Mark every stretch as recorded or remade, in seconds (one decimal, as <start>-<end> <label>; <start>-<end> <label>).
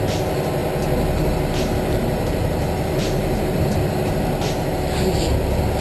0.0-5.8 recorded